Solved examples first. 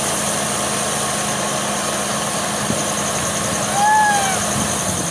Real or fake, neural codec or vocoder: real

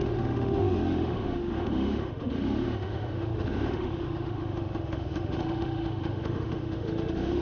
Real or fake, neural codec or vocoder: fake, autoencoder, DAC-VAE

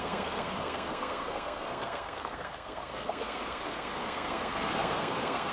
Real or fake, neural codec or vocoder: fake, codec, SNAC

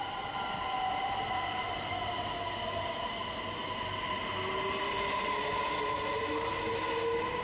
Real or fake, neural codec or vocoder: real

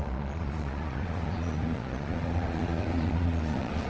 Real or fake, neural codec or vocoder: fake, vocoder, Vocos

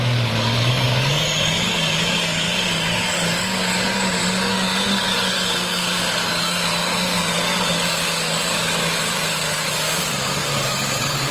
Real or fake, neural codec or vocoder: fake, codec, DAC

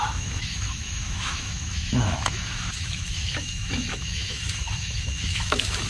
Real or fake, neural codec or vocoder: fake, autoencoder, DAC-VAE